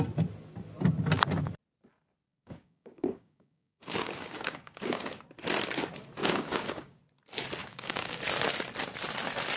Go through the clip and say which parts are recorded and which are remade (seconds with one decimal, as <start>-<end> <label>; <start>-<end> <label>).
0.0-2.3 recorded; 2.3-5.0 remade; 5.0-6.2 recorded; 6.2-7.0 remade; 7.0-7.6 recorded; 7.6-8.2 remade; 8.2-9.6 recorded